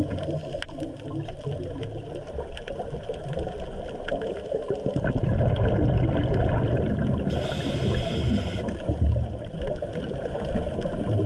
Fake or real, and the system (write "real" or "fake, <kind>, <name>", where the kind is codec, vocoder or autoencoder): real